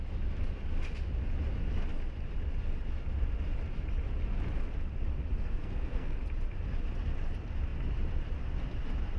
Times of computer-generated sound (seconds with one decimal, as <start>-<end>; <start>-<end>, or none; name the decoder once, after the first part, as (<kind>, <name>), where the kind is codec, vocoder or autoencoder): 5.3-6.2 (codec, SNAC)